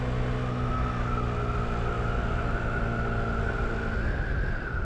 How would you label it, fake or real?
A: real